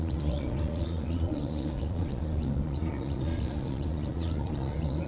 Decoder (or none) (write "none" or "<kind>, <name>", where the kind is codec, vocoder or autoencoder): vocoder, Vocos